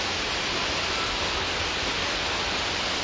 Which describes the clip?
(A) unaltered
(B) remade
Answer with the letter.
A